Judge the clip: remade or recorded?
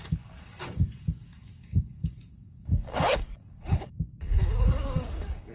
remade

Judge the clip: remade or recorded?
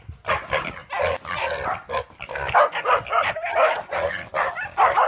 recorded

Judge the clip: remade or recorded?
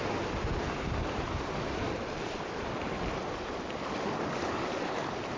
recorded